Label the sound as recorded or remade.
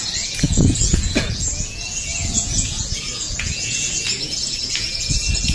remade